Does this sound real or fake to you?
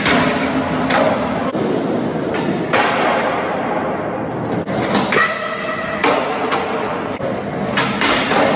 real